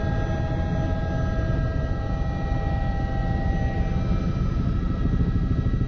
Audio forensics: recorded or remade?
recorded